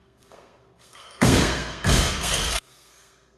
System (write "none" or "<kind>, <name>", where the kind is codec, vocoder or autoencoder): codec, SNAC